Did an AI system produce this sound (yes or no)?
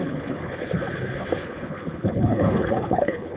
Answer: yes